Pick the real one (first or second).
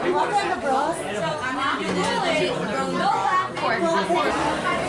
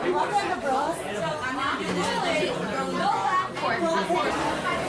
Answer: first